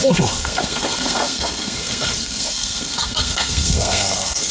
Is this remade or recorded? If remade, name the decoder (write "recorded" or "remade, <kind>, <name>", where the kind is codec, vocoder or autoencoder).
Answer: remade, codec, SNAC